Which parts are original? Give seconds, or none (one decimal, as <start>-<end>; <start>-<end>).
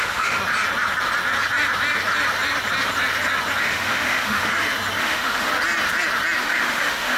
0.4-3.6; 4.5-5.0; 5.5-6.4